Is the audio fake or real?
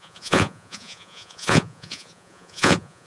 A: fake